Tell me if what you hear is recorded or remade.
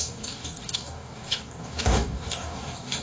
remade